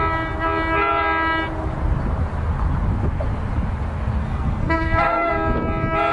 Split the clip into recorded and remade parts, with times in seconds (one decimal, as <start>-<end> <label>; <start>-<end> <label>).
0.0-4.2 recorded; 4.2-5.3 remade; 5.3-6.1 recorded